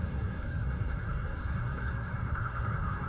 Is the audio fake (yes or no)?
yes